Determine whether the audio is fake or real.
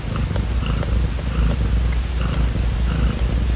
real